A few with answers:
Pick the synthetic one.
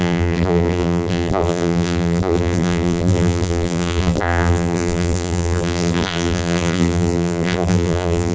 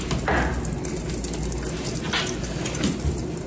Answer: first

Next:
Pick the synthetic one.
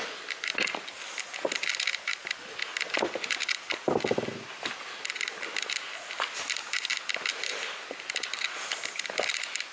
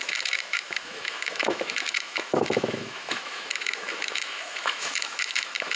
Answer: second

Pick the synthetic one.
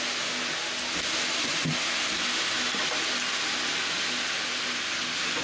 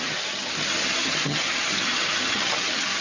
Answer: second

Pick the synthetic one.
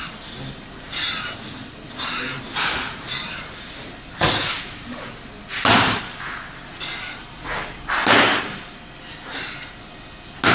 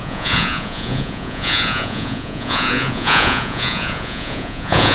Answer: second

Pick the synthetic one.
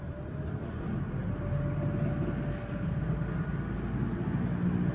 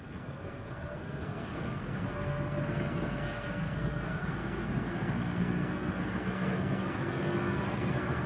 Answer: second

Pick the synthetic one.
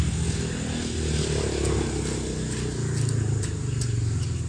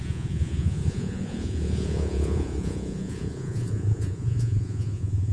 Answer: second